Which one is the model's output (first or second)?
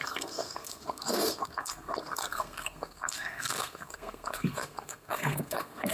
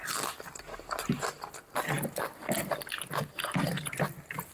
first